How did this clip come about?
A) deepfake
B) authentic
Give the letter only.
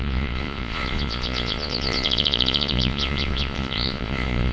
A